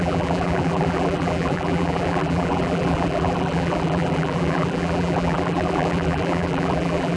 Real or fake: fake